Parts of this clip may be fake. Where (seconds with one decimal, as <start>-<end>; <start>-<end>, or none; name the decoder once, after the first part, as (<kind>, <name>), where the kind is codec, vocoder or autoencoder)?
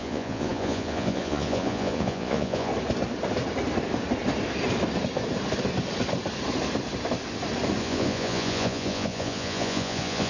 0.0-2.7 (vocoder, Vocos); 7.8-10.3